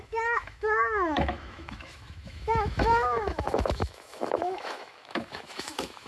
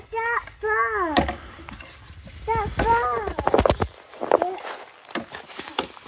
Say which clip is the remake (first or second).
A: first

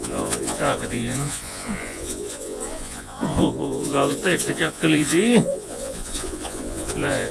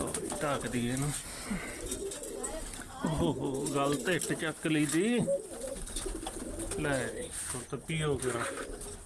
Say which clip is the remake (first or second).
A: first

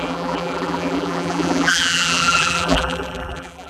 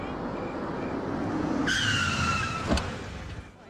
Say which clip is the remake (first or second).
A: first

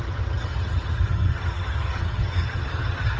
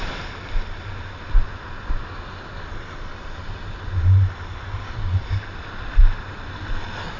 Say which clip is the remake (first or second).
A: first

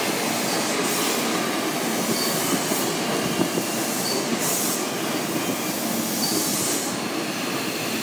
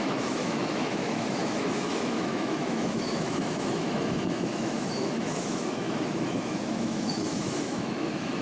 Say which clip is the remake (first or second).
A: second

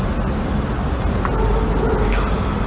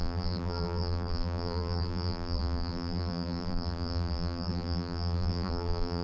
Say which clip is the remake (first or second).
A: second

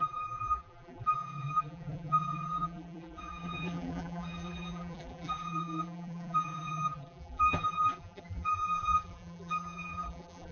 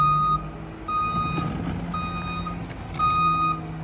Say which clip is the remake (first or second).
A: first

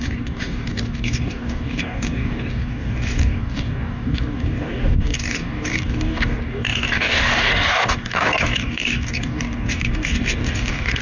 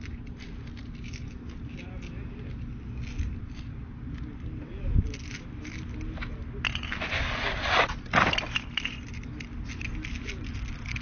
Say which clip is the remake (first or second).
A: first